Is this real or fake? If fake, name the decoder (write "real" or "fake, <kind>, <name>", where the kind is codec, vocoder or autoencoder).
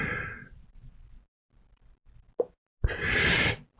real